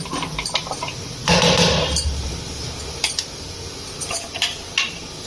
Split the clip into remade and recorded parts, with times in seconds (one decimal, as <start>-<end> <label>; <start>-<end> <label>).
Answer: 0.0-5.3 recorded